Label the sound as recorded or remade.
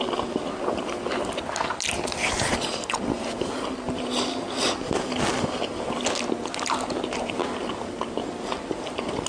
recorded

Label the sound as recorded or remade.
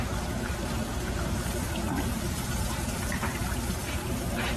remade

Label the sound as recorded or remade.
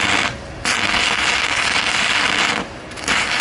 recorded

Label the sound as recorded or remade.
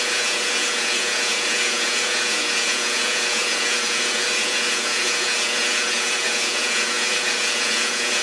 remade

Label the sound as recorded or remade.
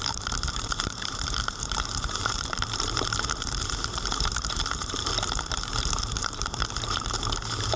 remade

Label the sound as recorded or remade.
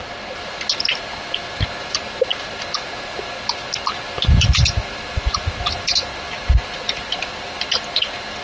recorded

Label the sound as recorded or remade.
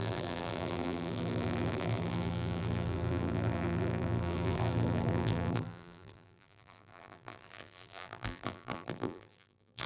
remade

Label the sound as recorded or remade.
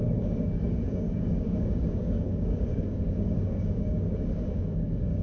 remade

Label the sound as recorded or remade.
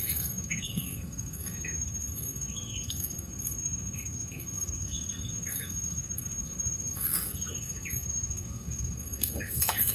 remade